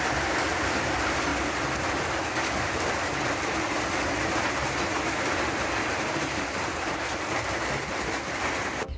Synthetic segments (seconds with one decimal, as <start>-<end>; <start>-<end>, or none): 5.8-9.0